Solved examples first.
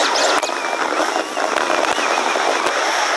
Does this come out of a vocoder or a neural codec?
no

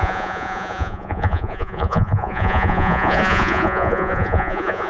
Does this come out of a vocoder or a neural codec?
yes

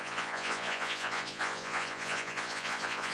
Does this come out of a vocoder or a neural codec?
yes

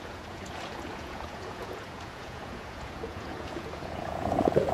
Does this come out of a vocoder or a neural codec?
yes